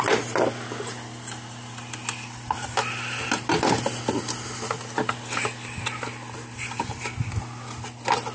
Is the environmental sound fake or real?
real